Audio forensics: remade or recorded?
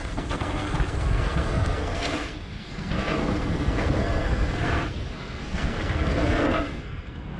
remade